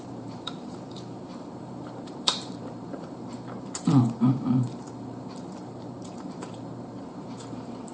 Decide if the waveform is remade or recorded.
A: remade